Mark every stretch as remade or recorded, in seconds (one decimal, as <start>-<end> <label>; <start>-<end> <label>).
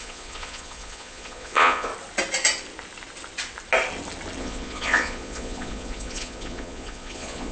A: 0.0-1.9 remade; 1.9-4.4 recorded; 4.4-7.5 remade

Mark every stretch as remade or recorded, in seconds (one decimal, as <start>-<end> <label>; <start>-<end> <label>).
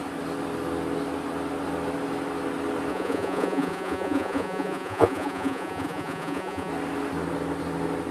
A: 0.0-2.9 recorded; 2.9-6.7 remade; 6.7-8.1 recorded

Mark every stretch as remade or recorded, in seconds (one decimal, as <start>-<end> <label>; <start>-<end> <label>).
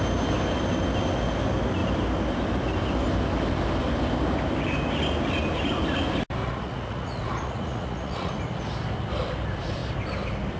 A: 0.0-6.4 recorded; 6.4-8.3 remade; 8.3-10.6 recorded